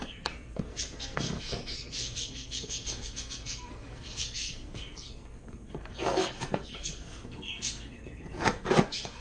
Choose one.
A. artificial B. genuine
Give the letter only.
A